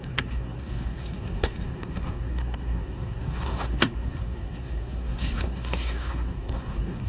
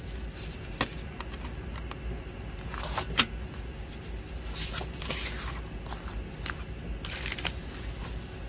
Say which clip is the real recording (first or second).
second